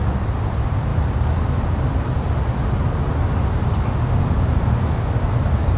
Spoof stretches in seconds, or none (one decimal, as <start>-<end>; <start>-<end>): none